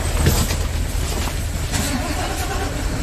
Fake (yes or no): no